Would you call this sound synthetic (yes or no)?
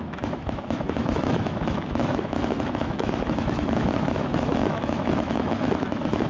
yes